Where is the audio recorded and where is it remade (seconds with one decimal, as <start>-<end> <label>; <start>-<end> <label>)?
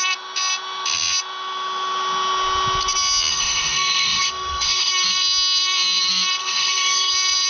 0.0-3.3 recorded; 3.3-4.9 remade; 4.9-6.4 recorded; 6.4-7.1 remade; 7.1-7.5 recorded